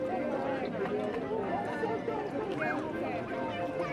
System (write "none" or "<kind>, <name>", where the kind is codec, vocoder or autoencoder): none